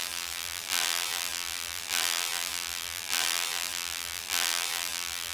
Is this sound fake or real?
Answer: fake